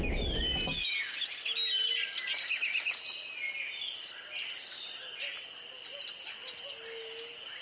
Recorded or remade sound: recorded